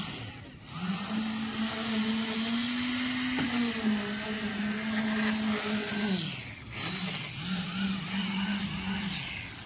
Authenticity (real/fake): real